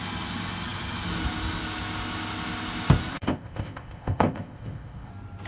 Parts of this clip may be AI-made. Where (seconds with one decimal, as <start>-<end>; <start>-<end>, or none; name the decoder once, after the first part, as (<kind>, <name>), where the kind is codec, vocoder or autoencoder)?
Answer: 3.1-5.1 (codec, ZipCodec)